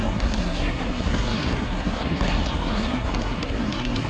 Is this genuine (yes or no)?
no